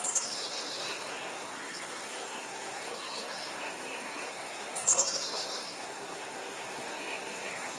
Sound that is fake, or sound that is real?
fake